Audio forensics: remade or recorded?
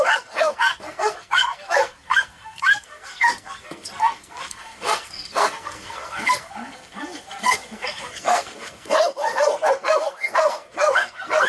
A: remade